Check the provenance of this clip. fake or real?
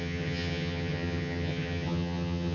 fake